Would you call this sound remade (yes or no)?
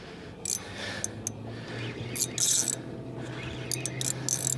no